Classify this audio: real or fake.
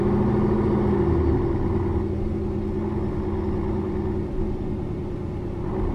real